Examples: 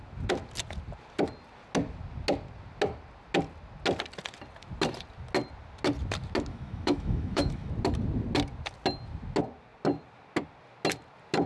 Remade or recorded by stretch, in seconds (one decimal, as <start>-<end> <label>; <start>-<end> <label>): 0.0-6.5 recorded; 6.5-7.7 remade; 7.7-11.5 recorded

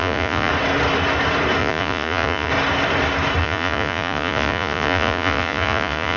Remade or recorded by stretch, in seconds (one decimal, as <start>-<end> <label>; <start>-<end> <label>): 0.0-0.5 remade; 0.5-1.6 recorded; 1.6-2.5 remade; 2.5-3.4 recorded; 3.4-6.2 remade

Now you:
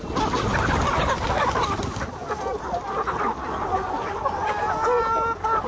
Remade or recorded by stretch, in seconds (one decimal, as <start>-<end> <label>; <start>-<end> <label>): 0.0-5.7 recorded

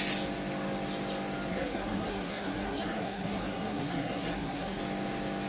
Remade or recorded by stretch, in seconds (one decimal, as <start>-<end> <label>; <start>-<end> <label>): 0.0-1.5 recorded; 1.5-4.8 remade; 4.8-5.5 recorded

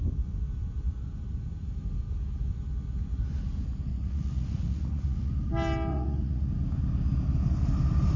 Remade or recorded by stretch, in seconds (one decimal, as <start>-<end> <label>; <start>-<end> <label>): 0.0-3.9 recorded; 3.9-5.3 remade; 5.3-5.9 recorded; 5.9-6.5 remade; 6.5-8.2 recorded